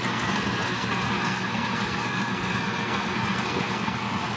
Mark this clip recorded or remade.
remade